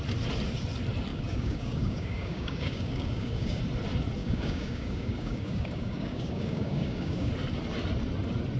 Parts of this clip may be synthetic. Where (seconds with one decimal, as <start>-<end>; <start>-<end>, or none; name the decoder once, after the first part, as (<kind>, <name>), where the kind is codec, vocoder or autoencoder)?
1.1-3.6 (codec, DAC); 4.2-7.3